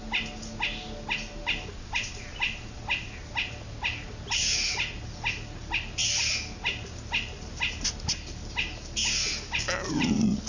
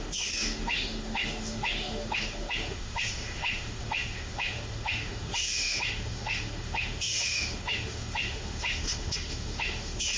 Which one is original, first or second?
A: first